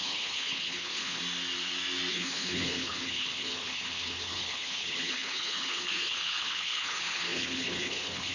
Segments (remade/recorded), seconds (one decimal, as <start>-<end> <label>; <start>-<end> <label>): 0.0-1.2 remade; 1.2-2.1 recorded; 2.1-8.3 remade